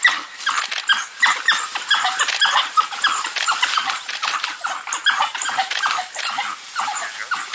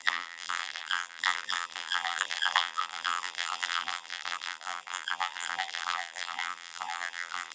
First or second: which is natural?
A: first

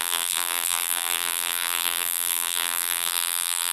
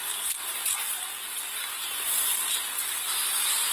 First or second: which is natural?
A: second